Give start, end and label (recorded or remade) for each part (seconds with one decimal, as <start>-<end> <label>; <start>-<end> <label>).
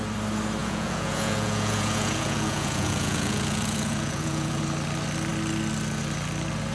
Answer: 0.0-0.6 recorded; 0.6-4.6 remade; 4.6-6.7 recorded